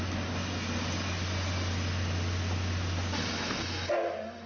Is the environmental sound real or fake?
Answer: real